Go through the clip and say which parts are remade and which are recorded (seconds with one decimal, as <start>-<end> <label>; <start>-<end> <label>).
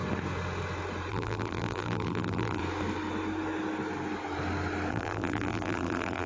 0.0-1.1 recorded; 1.1-2.6 remade; 2.6-4.9 recorded; 4.9-6.3 remade